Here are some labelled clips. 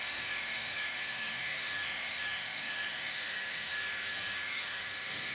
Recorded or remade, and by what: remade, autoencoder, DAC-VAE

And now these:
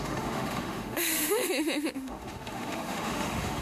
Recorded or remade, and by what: remade, autoencoder, DAC-VAE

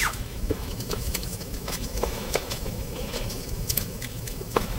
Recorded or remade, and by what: remade, autoencoder, DAC-VAE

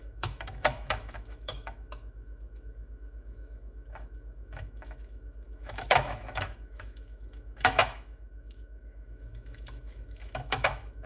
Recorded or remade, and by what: remade, autoencoder, DAC-VAE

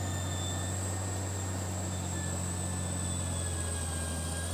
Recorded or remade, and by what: recorded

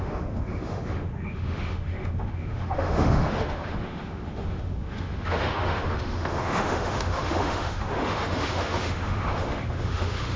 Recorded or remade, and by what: remade, autoencoder, DAC-VAE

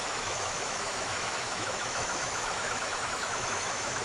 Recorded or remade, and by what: remade, autoencoder, DAC-VAE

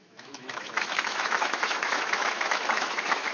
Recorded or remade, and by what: remade, autoencoder, DAC-VAE